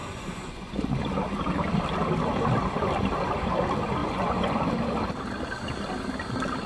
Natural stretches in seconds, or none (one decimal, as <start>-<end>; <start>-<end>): 0.9-4.0; 4.6-6.7